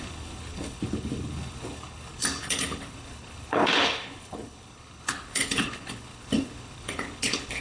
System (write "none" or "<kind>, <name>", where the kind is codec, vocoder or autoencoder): codec, HILCodec